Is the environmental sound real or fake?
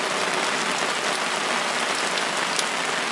real